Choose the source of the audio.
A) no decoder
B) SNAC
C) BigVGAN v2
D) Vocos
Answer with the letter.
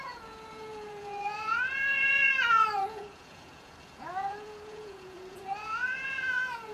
D